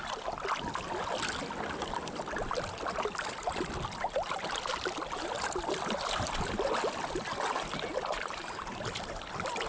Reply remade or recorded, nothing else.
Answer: recorded